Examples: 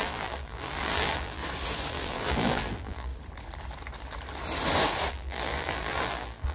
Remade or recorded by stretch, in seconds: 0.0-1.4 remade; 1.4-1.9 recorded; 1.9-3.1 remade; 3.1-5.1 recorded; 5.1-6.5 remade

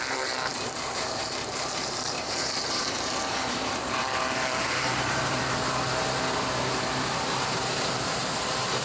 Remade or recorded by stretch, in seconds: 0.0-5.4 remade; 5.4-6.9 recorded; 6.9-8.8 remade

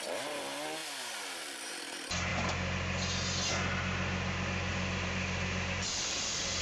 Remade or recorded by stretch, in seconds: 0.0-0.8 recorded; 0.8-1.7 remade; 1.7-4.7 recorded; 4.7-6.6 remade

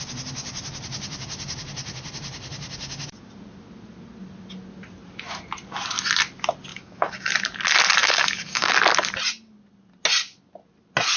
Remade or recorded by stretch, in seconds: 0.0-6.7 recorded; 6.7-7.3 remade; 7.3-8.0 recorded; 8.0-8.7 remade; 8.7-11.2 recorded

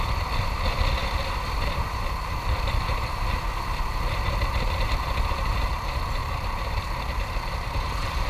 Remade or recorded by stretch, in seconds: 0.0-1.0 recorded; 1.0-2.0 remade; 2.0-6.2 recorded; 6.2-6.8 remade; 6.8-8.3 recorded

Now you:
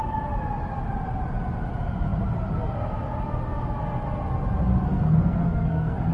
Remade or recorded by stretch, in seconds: 0.0-4.9 recorded; 4.9-6.1 remade